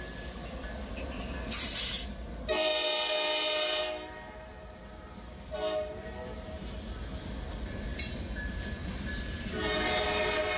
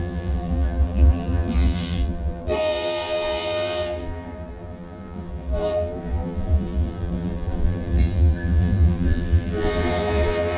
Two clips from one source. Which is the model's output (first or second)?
second